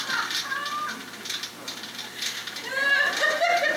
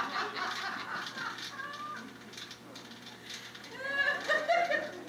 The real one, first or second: second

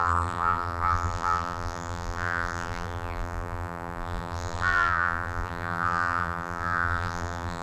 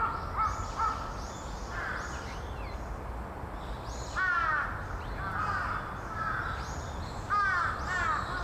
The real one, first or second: second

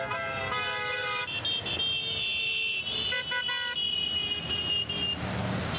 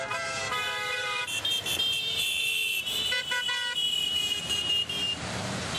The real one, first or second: first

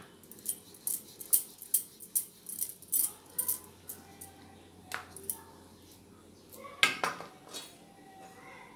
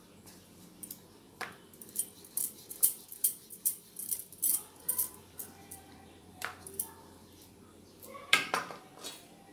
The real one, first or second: first